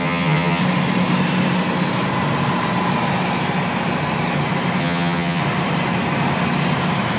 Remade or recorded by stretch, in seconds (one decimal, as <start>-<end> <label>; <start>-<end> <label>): 0.0-0.6 remade; 0.6-4.8 recorded; 4.8-5.4 remade; 5.4-7.2 recorded